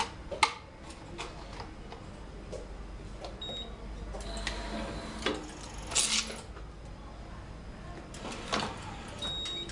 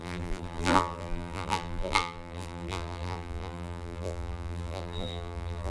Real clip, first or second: first